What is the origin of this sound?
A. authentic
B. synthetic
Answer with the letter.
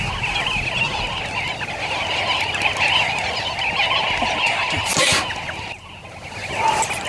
A